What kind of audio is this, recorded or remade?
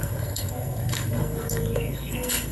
remade